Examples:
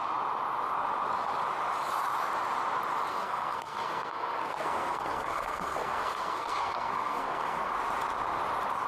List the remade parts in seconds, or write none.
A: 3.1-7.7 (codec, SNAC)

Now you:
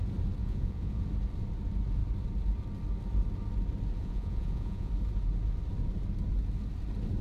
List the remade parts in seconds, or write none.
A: 0.4-1.0 (vocoder, Vocos); 4.0-4.9

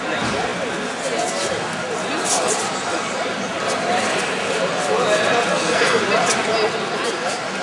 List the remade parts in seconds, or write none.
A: 5.5-6.0 (codec, SNAC)

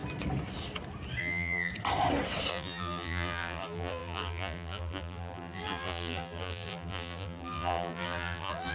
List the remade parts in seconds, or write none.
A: 1.2-1.7 (vocoder, BigVGAN v2); 2.5-8.7

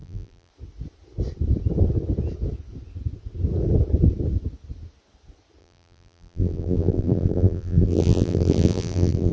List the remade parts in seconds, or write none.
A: 0.0-0.5 (vocoder, BigVGAN v2); 5.6-9.3

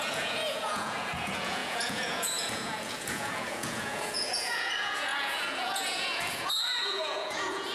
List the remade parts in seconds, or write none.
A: 0.0-7.7 (vocoder, Vocos)